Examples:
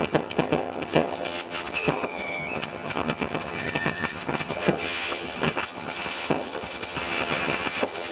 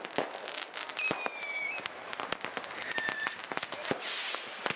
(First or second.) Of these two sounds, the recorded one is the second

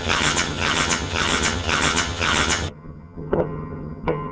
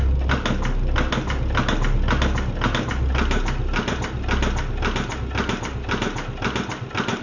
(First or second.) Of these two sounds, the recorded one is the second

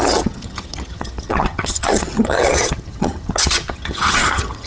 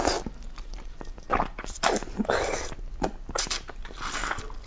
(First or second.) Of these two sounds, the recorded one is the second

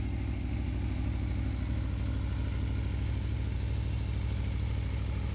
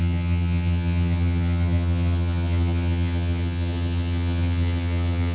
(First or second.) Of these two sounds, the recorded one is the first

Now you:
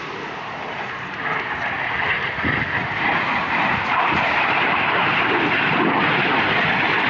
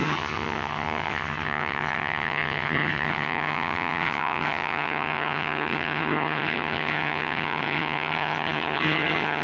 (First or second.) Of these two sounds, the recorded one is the first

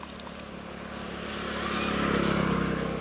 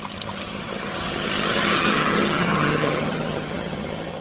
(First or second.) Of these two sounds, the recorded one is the first